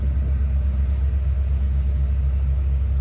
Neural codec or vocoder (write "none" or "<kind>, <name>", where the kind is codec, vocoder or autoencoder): none